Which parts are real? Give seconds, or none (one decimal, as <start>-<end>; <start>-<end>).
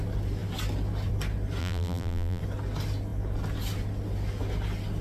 0.0-1.6; 2.4-5.0